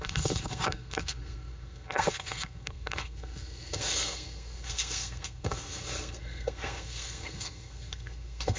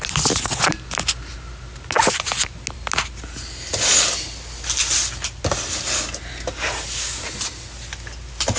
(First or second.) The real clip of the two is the second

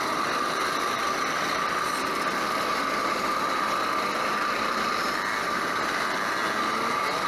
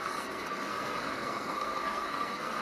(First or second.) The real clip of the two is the first